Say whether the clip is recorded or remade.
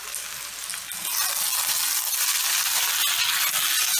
recorded